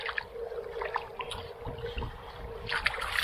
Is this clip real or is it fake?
real